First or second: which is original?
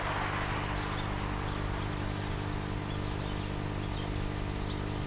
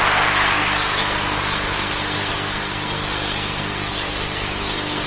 first